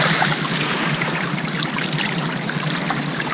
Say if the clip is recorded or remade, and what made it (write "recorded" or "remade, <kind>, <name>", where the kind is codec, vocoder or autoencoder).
recorded